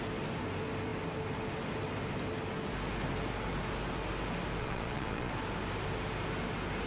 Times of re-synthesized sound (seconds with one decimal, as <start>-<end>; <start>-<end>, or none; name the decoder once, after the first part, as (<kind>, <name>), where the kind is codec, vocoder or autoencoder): 4.6-5.3 (vocoder, Vocos)

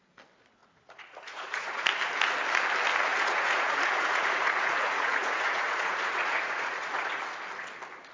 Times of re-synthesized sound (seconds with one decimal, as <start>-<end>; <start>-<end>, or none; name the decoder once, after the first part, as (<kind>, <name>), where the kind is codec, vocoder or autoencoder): 0.6-1.8 (vocoder, Vocos); 3.1-7.2